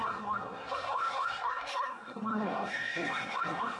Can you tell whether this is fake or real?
fake